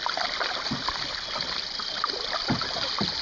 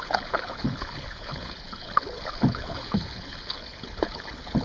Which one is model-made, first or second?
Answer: second